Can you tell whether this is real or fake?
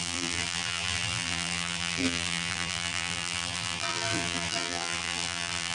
fake